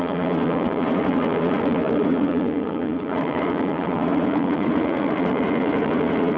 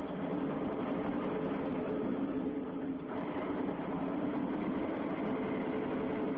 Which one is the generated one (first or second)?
first